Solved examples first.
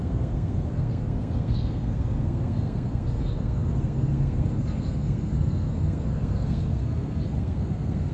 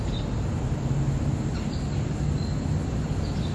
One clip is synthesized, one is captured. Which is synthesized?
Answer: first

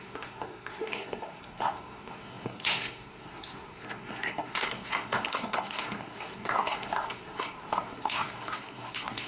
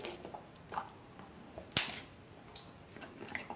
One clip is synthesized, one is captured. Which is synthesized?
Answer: first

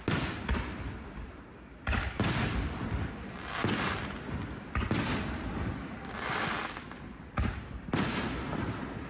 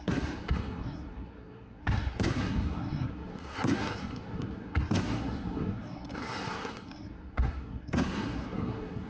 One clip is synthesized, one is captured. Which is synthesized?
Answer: second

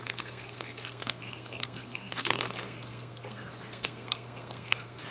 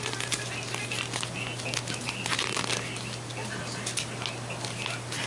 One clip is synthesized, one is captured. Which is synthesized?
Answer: first